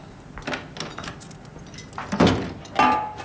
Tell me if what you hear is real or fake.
real